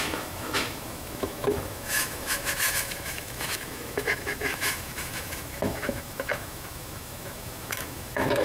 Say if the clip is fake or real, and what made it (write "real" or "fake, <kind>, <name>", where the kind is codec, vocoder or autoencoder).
fake, autoencoder, DAC-VAE